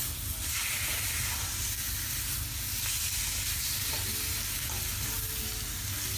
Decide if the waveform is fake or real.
real